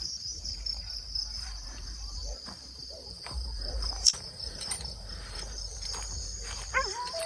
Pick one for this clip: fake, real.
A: fake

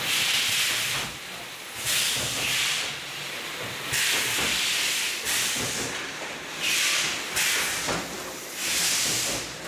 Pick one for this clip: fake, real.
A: fake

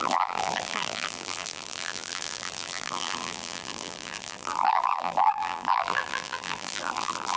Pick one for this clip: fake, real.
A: fake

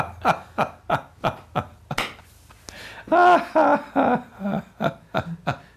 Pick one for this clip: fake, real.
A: real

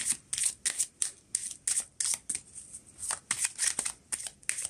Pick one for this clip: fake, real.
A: real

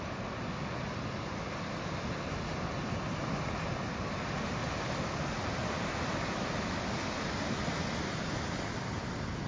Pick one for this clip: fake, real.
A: real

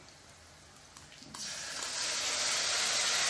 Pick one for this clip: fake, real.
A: real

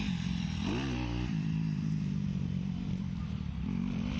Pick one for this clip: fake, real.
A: fake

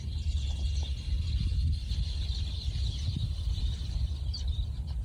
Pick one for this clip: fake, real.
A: real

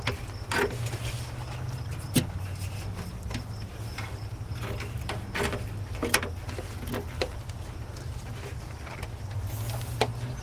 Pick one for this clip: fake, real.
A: real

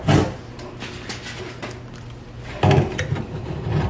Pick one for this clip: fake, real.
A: fake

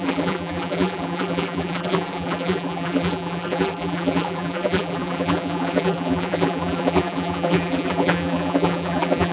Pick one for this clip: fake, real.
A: fake